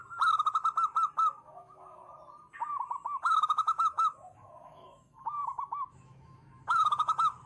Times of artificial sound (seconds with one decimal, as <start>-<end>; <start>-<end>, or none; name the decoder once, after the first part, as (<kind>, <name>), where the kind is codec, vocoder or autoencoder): 1.4-2.0 (autoencoder, DAC-VAE); 3.2-7.5